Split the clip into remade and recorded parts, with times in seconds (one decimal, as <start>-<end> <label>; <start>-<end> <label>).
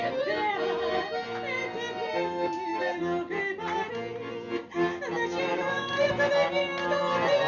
0.0-5.5 recorded; 5.5-6.1 remade; 6.1-7.5 recorded